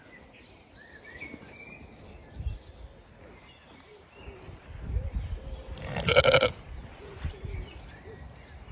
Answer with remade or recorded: remade